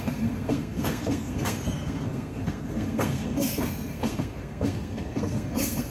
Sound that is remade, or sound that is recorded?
remade